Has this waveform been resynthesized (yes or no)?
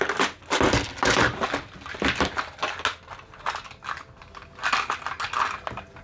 no